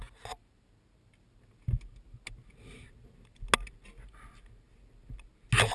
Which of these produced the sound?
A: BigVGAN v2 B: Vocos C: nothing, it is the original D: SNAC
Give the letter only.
C